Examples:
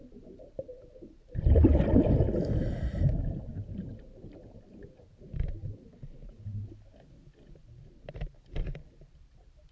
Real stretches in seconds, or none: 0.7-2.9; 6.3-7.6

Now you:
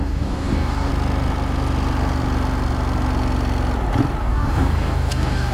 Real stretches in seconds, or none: 0.9-4.2

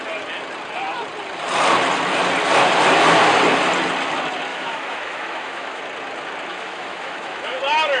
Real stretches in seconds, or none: 0.0-4.5; 5.8-6.5; 7.6-8.0

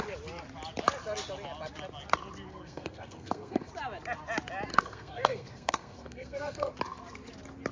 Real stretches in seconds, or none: 0.0-2.5; 3.7-4.7; 6.7-7.7

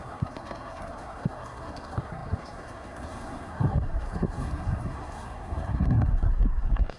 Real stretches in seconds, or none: none

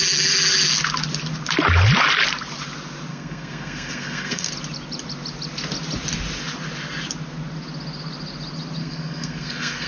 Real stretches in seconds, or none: 0.0-3.1; 4.5-8.8